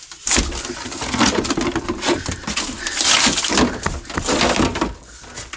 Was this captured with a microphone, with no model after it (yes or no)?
yes